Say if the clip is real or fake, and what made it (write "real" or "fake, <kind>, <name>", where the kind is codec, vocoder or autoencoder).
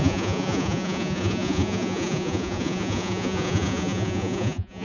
fake, vocoder, Vocos